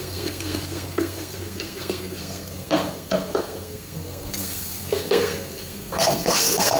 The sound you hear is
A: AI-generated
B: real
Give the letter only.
A